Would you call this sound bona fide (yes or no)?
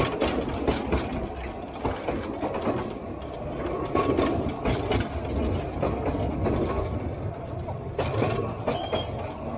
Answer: yes